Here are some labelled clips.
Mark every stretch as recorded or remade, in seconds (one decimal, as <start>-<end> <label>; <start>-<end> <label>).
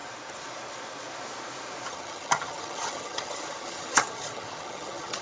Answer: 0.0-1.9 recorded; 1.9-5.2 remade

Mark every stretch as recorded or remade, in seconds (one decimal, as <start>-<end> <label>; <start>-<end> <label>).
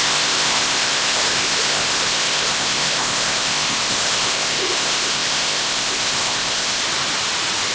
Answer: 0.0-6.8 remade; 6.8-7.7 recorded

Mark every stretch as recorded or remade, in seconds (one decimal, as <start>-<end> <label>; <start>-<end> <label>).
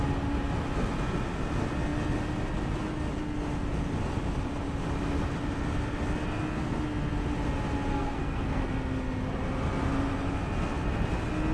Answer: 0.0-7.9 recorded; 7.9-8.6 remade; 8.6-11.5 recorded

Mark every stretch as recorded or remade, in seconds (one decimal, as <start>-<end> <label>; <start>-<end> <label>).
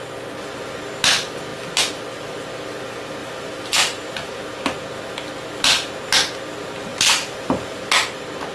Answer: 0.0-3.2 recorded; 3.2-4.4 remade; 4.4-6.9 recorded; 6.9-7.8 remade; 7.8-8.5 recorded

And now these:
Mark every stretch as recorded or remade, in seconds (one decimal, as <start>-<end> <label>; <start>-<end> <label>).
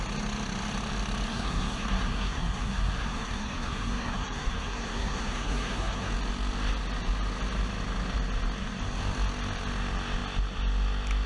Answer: 0.0-1.3 recorded; 1.3-6.1 remade; 6.1-11.3 recorded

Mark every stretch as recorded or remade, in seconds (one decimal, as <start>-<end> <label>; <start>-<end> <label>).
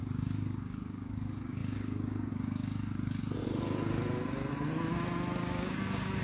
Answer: 0.0-3.2 remade; 3.2-5.4 recorded; 5.4-6.2 remade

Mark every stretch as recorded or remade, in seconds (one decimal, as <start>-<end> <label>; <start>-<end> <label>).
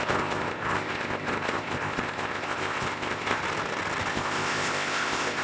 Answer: 0.0-3.4 remade; 3.4-4.1 recorded; 4.1-5.4 remade